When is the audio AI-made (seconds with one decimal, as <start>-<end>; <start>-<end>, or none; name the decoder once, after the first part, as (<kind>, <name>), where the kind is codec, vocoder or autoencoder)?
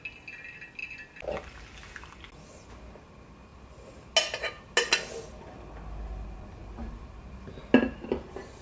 none